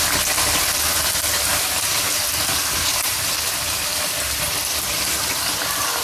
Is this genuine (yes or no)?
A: yes